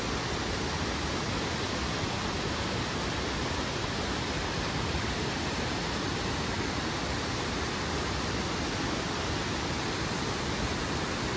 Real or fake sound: real